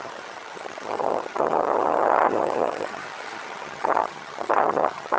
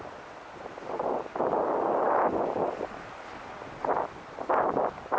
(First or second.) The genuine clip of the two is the second